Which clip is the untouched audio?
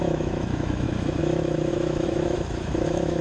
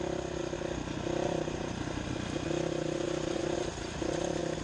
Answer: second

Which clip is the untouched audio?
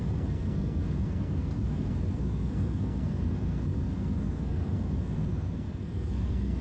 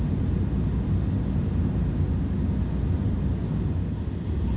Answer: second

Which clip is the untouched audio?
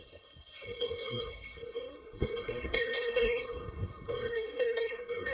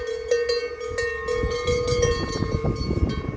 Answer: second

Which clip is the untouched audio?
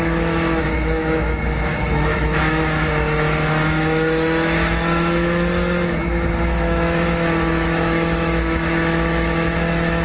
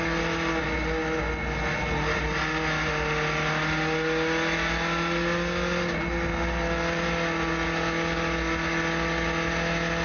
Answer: second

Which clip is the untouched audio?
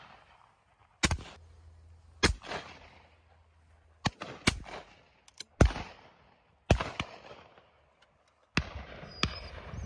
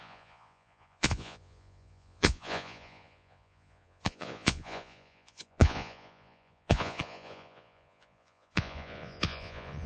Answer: first